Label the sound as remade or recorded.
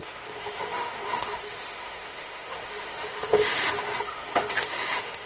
remade